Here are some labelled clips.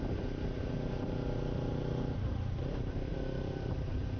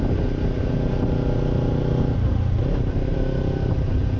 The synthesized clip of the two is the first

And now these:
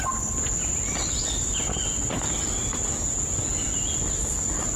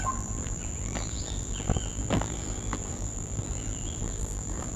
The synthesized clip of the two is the second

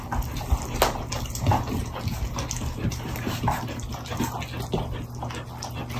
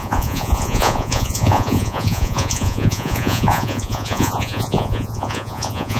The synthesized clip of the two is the second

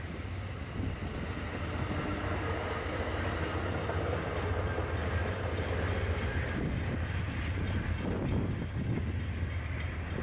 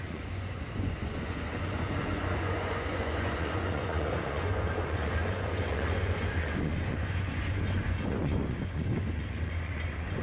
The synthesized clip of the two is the second